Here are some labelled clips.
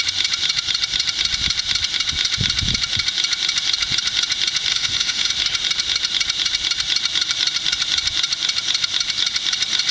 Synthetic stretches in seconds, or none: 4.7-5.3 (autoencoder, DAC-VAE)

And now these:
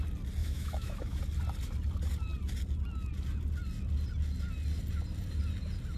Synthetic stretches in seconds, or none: 0.4-1.2 (autoencoder, DAC-VAE)